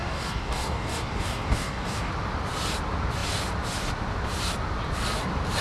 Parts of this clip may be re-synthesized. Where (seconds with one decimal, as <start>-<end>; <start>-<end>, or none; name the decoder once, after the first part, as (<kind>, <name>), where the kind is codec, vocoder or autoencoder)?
0.0-2.1 (codec, DAC)